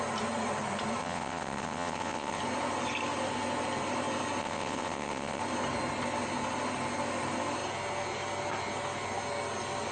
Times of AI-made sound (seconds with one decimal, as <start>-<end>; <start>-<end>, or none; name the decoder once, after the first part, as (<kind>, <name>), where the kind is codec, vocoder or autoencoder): 1.0-2.4 (vocoder, WaveNeXt); 4.4-5.4